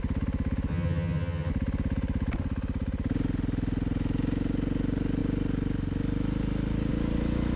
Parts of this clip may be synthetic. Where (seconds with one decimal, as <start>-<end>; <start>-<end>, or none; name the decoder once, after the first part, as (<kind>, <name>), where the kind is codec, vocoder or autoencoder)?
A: 0.7-1.5 (vocoder, HiFi-GAN)